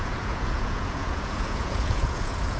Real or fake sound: fake